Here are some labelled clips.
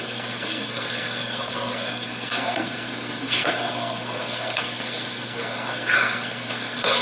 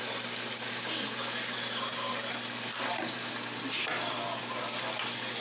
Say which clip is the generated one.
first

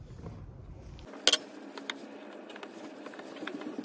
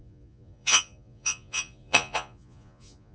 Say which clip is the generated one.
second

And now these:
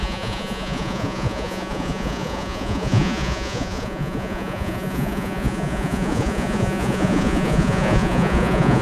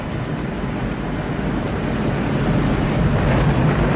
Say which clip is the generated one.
first